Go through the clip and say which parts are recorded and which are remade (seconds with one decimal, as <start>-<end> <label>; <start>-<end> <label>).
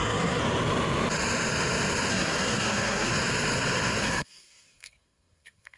0.0-0.4 remade; 0.4-2.1 recorded; 2.1-3.1 remade; 3.1-4.0 recorded; 4.0-5.8 remade